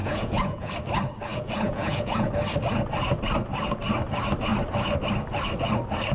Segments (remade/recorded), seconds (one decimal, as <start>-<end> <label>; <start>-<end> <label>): 0.0-0.7 remade; 0.7-1.3 recorded; 1.3-2.3 remade; 2.3-6.1 recorded